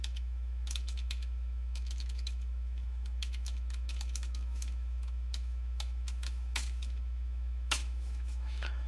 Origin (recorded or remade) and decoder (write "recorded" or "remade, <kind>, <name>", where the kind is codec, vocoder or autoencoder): remade, autoencoder, DAC-VAE